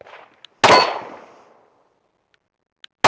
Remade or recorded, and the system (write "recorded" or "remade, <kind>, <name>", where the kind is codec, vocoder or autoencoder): recorded